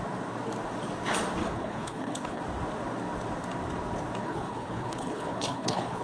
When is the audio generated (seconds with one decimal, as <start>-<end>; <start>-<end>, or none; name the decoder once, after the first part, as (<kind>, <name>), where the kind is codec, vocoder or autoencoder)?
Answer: 1.4-2.4 (codec, HILCodec); 4.2-6.0